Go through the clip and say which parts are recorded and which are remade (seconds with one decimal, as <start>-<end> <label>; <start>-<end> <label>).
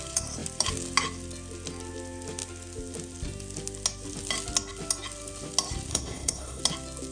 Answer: 0.0-5.9 recorded; 5.9-6.6 remade; 6.6-7.1 recorded